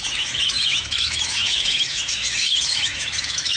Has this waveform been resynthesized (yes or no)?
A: yes